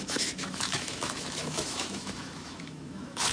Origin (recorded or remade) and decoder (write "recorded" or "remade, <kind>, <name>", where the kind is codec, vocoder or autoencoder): remade, autoencoder, DAC-VAE